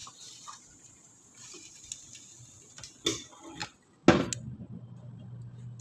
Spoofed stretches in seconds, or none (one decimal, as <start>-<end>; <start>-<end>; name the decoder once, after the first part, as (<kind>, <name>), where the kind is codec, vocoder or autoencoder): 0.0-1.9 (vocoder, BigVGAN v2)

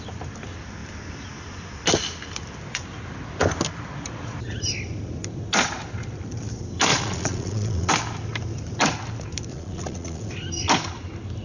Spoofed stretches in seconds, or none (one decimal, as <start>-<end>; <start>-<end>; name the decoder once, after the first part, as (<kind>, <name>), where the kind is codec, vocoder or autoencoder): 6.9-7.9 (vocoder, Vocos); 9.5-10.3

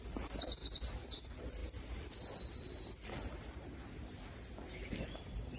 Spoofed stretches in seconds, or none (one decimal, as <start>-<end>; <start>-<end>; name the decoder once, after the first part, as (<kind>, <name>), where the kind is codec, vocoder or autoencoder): none

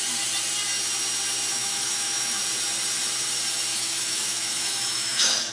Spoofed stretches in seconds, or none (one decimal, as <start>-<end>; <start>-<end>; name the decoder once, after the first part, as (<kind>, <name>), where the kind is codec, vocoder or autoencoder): 1.5-2.4 (autoencoder, DAC-VAE); 3.7-5.5

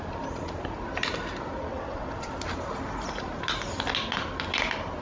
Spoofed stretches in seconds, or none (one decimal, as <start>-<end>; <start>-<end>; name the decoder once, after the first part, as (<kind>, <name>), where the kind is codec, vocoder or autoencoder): 1.7-2.3 (vocoder, WaveNeXt)

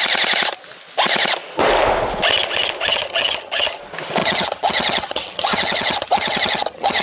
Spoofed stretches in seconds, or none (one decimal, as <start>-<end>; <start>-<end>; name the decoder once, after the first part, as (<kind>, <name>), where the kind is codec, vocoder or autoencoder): 2.9-3.8 (vocoder, HiFi-GAN); 4.2-7.0

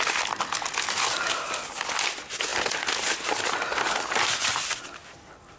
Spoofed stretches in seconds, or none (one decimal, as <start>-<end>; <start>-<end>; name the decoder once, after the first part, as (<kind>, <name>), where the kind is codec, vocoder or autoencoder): none